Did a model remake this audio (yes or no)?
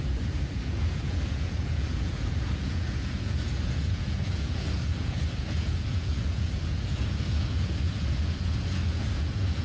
yes